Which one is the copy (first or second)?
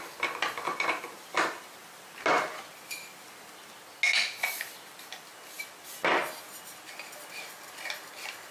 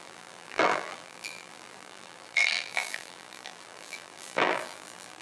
second